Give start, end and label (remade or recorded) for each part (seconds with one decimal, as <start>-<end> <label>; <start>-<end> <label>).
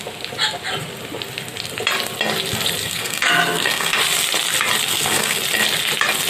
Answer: 0.0-2.8 recorded; 2.8-4.0 remade; 4.0-4.9 recorded; 4.9-5.4 remade; 5.4-6.3 recorded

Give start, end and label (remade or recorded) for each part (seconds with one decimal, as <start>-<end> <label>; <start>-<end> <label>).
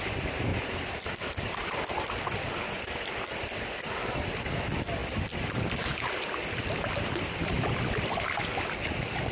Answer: 0.0-9.3 recorded